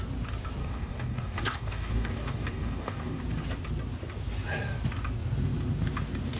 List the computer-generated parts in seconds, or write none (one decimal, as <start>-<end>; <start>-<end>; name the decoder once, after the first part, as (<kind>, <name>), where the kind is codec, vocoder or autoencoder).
0.6-3.2 (codec, DAC)